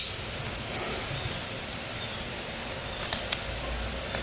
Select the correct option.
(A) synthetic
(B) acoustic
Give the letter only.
B